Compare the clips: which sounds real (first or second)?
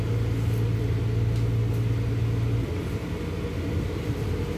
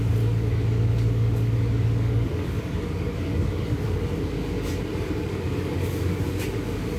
first